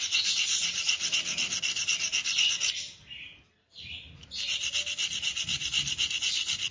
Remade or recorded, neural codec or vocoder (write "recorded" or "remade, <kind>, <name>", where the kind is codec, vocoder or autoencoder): recorded